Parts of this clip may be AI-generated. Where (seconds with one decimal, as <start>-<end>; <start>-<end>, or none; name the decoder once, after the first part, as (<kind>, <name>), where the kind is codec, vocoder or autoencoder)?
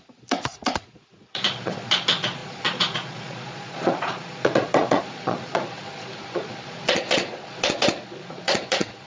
0.0-9.1 (vocoder, Vocos)